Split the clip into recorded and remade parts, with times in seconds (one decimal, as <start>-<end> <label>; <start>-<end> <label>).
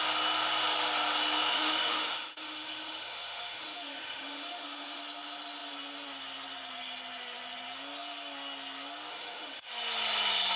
0.0-1.5 recorded; 1.5-5.0 remade; 5.0-9.1 recorded; 9.1-9.7 remade; 9.7-10.6 recorded